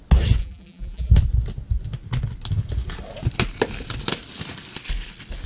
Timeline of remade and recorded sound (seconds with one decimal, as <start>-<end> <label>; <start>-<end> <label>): 0.0-0.4 recorded; 0.4-1.1 remade; 1.1-5.5 recorded